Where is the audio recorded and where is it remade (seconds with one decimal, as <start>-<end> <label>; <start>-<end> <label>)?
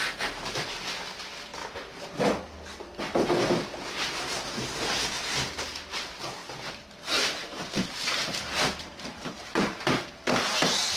0.0-6.4 recorded; 6.4-7.0 remade; 7.0-7.4 recorded; 7.4-9.8 remade; 9.8-11.0 recorded